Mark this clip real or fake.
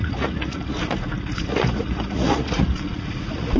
fake